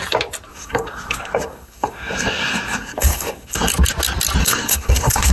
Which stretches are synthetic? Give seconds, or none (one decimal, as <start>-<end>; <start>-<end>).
0.5-3.7; 4.4-5.3